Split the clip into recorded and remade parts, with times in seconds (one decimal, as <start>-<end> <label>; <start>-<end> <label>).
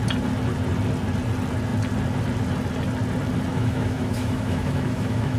0.0-3.5 recorded; 3.5-5.4 remade